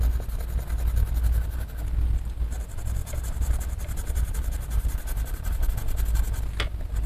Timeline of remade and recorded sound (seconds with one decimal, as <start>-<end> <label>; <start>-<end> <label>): 0.0-3.0 recorded; 3.0-5.7 remade; 5.7-7.1 recorded